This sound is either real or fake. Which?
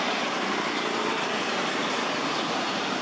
real